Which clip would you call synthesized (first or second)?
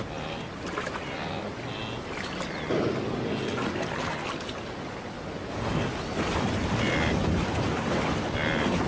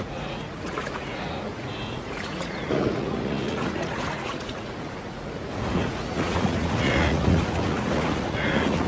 second